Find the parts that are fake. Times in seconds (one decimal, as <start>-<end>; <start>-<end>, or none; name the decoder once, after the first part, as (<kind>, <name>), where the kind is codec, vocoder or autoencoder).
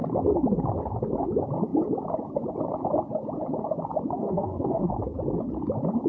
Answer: 4.2-4.9 (codec, SNAC)